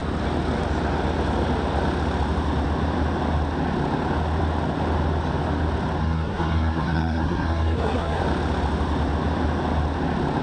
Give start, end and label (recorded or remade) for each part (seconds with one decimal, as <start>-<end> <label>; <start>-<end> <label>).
0.0-6.0 recorded; 6.0-8.2 remade; 8.2-10.4 recorded